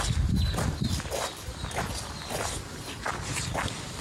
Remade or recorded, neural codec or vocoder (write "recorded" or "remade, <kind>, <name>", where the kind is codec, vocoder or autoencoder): recorded